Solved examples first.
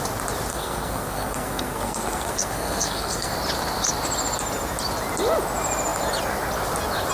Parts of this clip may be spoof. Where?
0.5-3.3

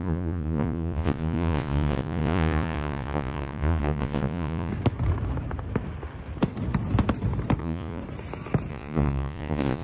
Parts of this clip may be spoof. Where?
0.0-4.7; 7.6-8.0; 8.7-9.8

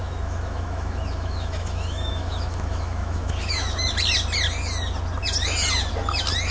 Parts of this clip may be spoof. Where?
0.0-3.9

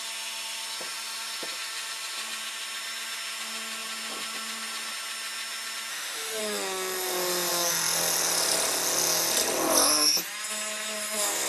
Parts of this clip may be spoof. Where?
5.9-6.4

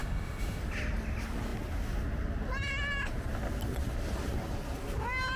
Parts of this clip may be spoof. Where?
0.0-0.6

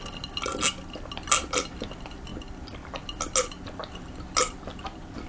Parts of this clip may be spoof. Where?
none